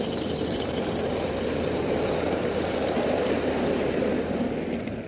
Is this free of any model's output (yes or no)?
no